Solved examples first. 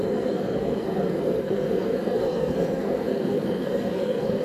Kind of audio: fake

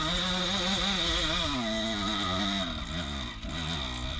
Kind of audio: real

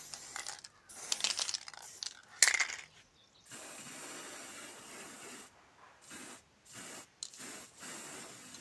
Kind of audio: real